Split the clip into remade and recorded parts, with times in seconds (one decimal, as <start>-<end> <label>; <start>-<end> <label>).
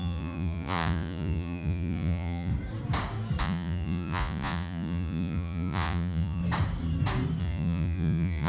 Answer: 0.0-2.5 remade; 2.5-3.4 recorded; 3.4-6.4 remade; 6.4-7.4 recorded; 7.4-8.5 remade